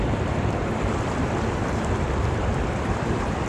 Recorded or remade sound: remade